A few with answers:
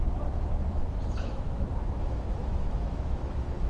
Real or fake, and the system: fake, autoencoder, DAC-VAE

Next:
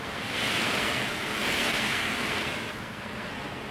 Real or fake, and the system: fake, codec, SNAC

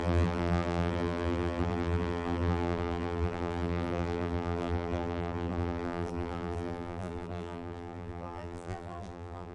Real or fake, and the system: fake, vocoder, BigVGAN v2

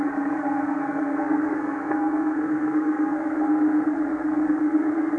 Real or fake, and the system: fake, codec, SNAC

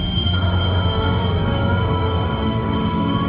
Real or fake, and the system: fake, autoencoder, DAC-VAE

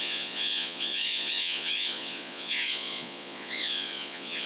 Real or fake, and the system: fake, vocoder, Vocos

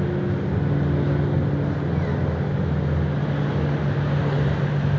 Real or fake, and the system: real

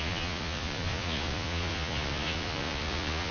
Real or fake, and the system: fake, vocoder, Vocos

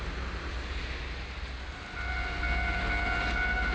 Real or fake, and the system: real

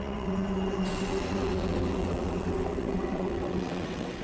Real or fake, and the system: fake, vocoder, WaveNeXt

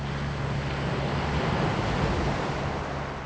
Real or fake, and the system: real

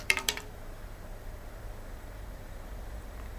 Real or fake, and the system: fake, vocoder, BigVGAN v2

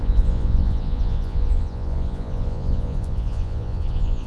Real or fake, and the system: fake, vocoder, Vocos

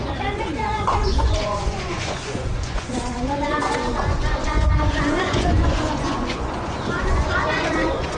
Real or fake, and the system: fake, vocoder, Vocos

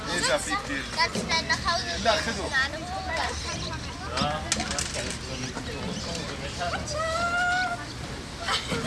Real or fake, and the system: real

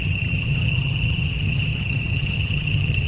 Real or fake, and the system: fake, vocoder, HiFi-GAN